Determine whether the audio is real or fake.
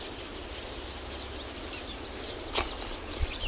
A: real